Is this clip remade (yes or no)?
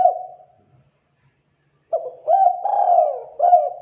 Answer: no